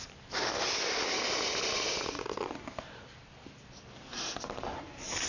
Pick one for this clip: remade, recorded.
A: recorded